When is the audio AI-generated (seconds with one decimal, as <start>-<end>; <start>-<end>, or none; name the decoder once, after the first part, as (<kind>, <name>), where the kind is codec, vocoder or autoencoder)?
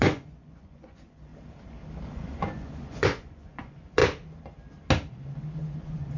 0.0-1.3 (vocoder, Vocos); 2.1-4.0; 5.8-6.2